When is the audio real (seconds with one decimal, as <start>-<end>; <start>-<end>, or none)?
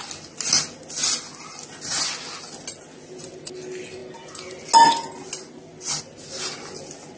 0.0-7.2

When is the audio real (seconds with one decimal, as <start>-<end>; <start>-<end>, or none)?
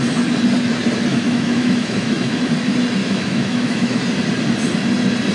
0.0-1.1; 2.5-3.0; 4.0-5.3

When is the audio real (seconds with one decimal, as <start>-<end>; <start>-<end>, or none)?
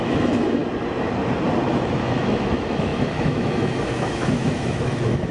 0.6-1.7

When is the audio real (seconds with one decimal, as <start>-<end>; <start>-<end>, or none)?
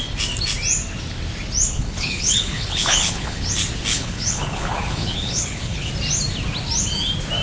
0.0-1.7; 3.5-3.9; 5.9-7.4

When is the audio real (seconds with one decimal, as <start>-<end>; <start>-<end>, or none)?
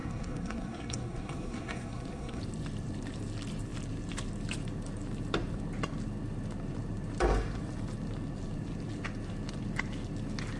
2.4-10.6